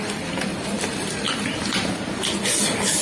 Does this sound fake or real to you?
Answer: real